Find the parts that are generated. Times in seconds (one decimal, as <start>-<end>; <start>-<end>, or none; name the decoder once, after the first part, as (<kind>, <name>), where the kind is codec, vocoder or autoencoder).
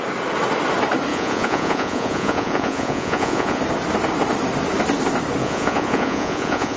1.1-3.6 (vocoder, Vocos); 5.4-6.8